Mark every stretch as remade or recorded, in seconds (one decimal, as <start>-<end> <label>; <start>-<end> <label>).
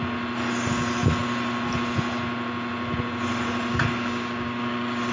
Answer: 0.0-3.7 recorded; 3.7-5.1 remade